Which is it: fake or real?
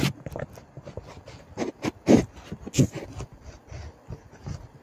real